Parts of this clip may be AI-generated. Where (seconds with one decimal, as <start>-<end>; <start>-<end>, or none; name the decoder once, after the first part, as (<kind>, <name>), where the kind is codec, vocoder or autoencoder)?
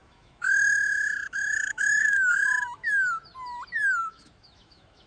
0.0-3.1 (autoencoder, DAC-VAE); 4.0-5.1